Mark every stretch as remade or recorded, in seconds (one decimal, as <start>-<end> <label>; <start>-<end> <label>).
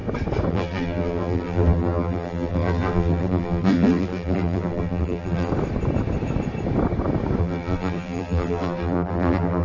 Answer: 0.0-0.5 recorded; 0.5-5.5 remade; 5.5-7.4 recorded; 7.4-9.6 remade